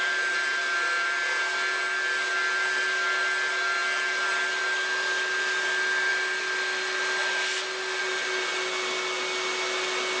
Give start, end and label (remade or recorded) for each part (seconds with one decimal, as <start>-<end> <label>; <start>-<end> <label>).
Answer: 0.0-10.2 recorded